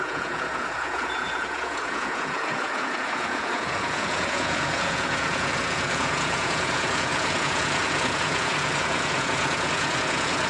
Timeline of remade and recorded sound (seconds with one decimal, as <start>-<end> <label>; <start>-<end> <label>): 0.0-10.5 remade